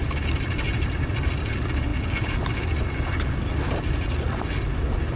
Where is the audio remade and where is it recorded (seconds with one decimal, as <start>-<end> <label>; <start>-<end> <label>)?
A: 0.0-5.2 recorded